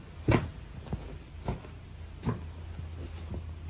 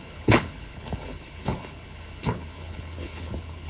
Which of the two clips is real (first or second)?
first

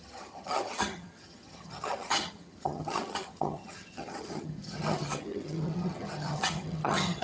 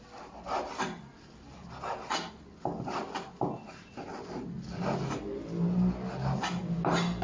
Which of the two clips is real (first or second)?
second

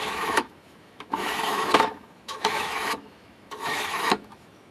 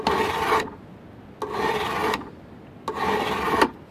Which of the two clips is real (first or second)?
second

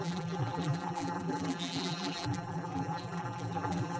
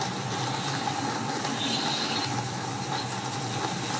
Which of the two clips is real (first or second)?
second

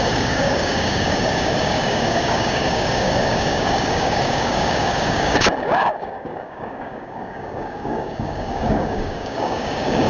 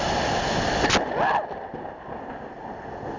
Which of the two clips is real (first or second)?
second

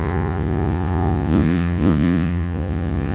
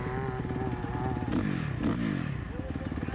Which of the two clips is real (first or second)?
second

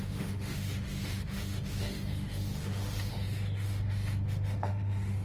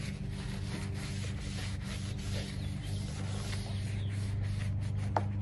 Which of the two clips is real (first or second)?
second